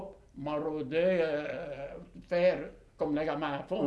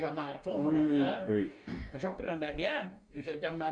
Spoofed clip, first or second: second